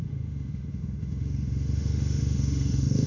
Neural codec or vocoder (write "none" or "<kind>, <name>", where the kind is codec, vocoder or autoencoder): autoencoder, DAC-VAE